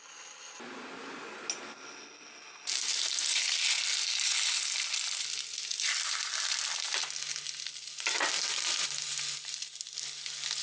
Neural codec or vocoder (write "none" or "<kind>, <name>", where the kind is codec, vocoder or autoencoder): none